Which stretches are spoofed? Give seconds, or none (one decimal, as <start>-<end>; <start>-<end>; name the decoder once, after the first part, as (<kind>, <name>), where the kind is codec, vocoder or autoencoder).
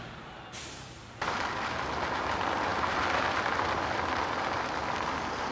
none